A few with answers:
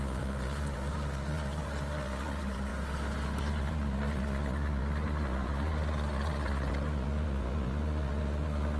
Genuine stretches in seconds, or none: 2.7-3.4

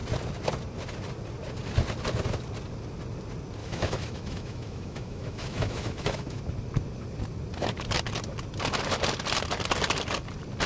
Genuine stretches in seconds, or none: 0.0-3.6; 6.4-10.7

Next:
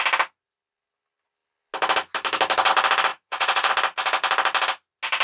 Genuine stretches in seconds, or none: 0.0-3.1; 3.7-5.2